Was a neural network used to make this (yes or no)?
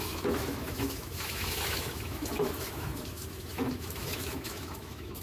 yes